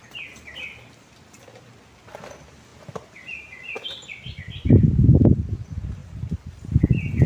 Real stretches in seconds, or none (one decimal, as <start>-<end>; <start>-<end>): 0.0-6.0; 6.7-7.3